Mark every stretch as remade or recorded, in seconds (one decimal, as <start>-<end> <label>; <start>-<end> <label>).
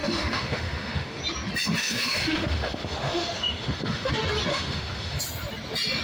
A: 0.0-1.2 remade; 1.2-1.8 recorded; 1.8-4.1 remade; 4.1-4.5 recorded; 4.5-5.2 remade; 5.2-6.0 recorded